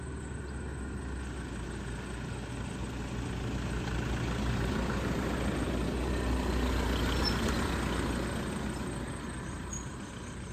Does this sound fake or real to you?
real